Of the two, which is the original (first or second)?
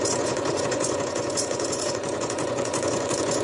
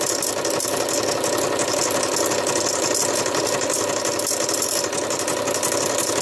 second